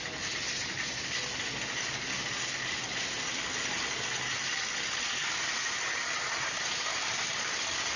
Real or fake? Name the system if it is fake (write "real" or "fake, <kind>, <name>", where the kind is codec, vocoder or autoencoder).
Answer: real